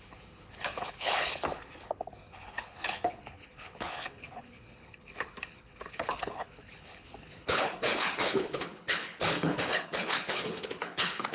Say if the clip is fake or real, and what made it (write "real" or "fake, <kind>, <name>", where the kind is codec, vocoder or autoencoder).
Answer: fake, codec, HILCodec